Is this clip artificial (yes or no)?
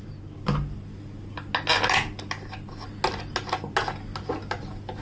no